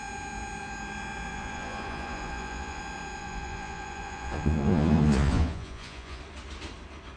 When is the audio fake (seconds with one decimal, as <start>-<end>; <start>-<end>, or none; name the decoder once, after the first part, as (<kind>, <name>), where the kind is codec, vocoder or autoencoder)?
1.3-2.8 (vocoder, Vocos); 3.2-6.2